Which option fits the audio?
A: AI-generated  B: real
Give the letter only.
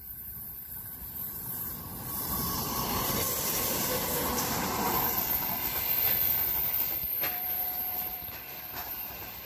A